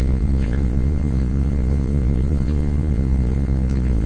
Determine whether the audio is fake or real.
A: fake